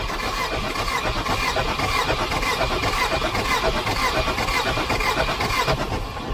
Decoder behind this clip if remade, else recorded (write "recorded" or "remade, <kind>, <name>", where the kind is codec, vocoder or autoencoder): recorded